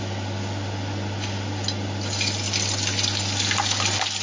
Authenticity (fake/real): real